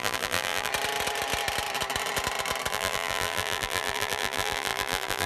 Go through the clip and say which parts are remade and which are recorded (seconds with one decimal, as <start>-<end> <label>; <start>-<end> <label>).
0.0-0.7 remade; 0.7-2.7 recorded; 2.7-5.3 remade